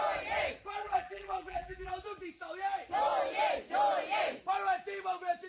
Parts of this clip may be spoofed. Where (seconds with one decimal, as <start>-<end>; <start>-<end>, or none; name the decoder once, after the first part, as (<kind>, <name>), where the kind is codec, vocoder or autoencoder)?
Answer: 0.8-1.9 (vocoder, BigVGAN v2)